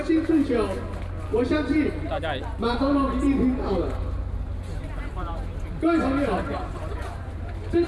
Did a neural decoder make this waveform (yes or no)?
no